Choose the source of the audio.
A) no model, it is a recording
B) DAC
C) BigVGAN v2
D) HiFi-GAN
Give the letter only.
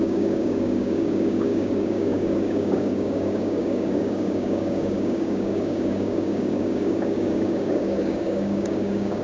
B